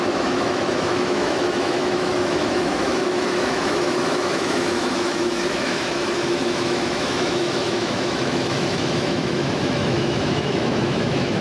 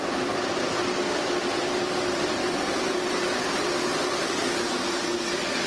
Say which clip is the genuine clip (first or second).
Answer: second